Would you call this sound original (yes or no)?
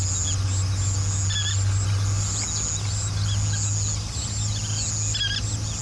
yes